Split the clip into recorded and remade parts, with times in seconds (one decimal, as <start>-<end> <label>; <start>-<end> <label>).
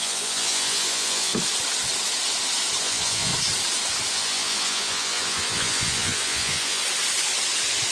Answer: 0.0-1.3 remade; 1.3-2.8 recorded; 2.8-3.3 remade; 3.3-4.1 recorded; 4.1-6.8 remade; 6.8-7.9 recorded